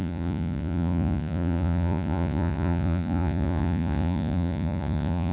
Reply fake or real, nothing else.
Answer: fake